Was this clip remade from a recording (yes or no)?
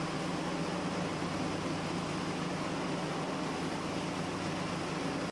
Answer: no